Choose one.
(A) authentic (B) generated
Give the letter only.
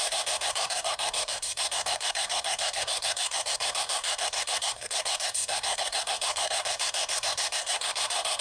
B